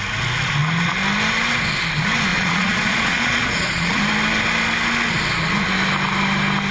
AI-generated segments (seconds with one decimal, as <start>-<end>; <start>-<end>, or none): 2.3-4.0